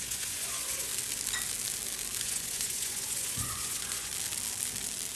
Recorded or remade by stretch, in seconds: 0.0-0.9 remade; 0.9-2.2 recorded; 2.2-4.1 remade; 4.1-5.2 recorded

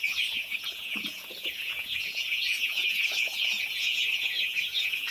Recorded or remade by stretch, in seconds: 0.0-5.1 remade

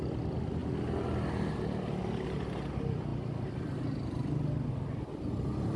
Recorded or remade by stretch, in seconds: 0.0-5.8 recorded

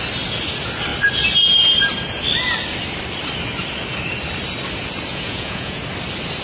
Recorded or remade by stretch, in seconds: 0.0-5.1 recorded; 5.1-5.8 remade; 5.8-6.4 recorded